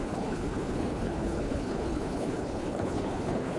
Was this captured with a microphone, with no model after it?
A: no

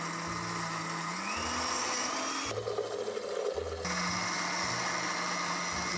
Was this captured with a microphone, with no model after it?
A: yes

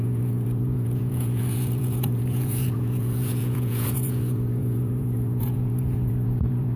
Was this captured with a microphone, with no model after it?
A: no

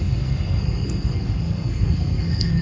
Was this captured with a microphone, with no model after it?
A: no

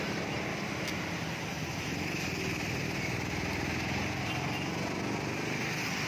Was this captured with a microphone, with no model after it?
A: yes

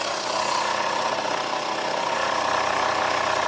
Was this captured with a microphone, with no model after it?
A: no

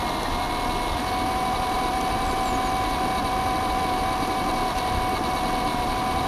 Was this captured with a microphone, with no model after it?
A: yes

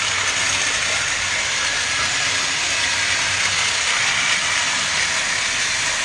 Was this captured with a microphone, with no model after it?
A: yes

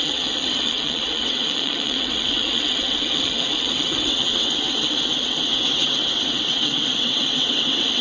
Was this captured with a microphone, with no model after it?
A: no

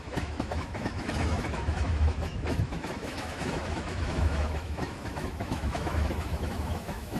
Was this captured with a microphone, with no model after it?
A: no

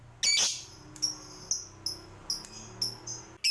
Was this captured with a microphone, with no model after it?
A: yes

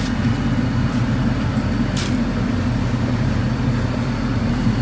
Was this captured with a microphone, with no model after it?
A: yes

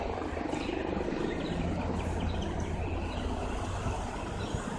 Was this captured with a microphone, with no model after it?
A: yes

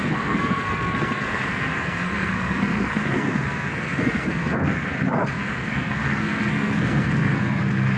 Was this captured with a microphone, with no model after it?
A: no